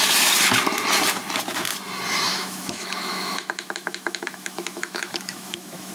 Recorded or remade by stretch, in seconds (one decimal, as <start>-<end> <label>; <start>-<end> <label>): 0.0-2.3 recorded; 2.3-5.9 remade